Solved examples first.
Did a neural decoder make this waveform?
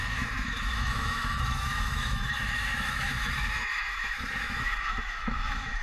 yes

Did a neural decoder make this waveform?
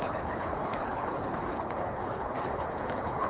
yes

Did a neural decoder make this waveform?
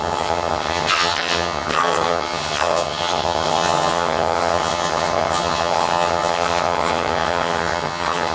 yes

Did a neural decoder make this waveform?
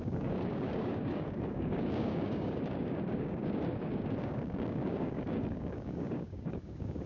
yes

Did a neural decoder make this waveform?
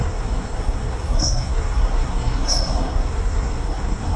yes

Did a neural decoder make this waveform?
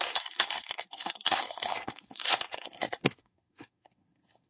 yes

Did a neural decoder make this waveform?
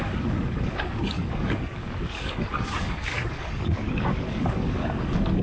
yes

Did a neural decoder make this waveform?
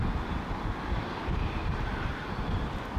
no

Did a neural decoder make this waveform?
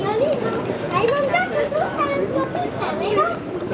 no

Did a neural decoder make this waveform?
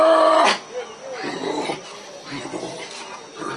no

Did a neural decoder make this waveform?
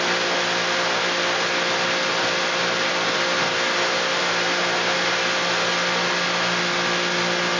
no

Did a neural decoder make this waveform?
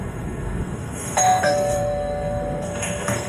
yes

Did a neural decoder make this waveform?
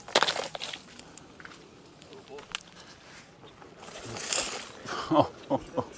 no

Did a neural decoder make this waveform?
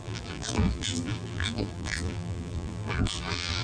yes